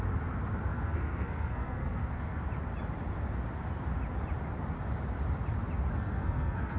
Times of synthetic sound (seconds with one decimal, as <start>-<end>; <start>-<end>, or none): 0.7-2.4; 5.9-6.8